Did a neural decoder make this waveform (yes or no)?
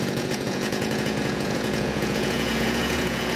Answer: yes